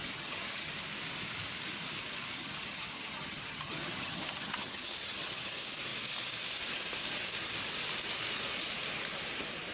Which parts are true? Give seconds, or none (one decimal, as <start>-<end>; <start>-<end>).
0.7-2.4; 5.5-9.7